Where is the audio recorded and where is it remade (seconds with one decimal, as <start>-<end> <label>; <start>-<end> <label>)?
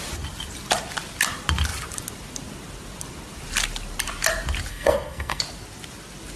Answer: 0.0-4.7 recorded; 4.7-5.4 remade; 5.4-6.4 recorded